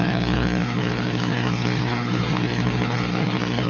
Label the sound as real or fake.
fake